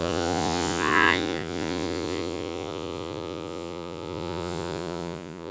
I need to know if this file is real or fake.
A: fake